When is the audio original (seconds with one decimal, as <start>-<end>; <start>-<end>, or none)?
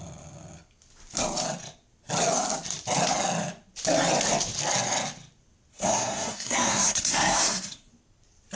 0.0-5.7; 7.9-8.6